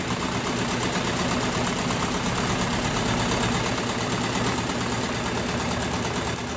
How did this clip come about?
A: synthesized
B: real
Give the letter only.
B